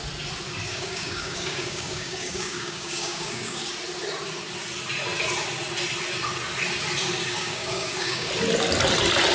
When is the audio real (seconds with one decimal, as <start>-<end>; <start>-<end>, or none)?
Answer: 0.0-0.7; 3.7-7.2; 8.3-9.3